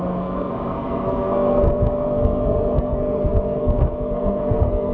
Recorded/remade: remade